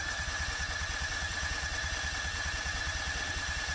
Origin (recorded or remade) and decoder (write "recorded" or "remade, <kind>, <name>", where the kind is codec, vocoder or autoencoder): remade, vocoder, BigVGAN v2